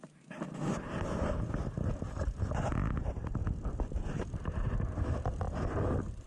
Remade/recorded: remade